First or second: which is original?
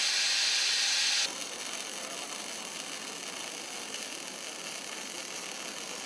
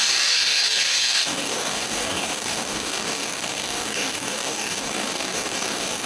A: first